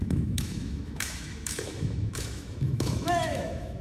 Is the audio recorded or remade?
remade